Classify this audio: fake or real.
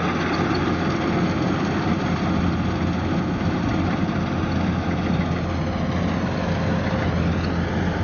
real